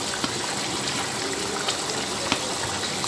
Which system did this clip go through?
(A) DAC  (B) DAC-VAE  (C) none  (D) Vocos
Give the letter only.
C